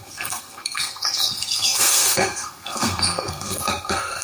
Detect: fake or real fake